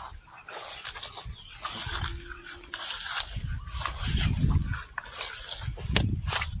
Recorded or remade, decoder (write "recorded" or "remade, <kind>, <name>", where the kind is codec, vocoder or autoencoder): recorded